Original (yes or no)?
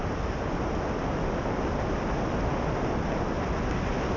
yes